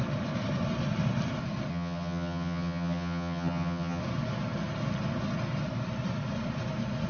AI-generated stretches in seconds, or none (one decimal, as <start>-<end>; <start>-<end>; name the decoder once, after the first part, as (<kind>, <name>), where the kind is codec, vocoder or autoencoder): 1.7-4.0 (vocoder, HiFi-GAN)